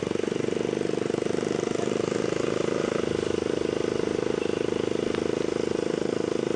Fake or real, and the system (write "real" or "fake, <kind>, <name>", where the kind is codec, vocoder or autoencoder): real